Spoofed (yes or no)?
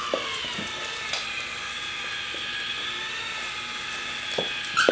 yes